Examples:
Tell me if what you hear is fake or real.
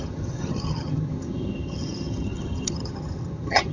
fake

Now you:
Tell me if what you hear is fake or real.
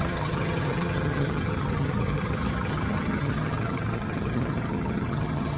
fake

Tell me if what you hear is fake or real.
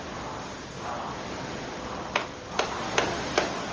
real